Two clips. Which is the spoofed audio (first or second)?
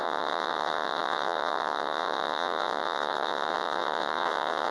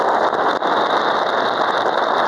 first